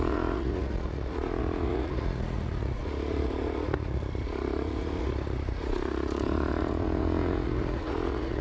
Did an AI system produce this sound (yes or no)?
yes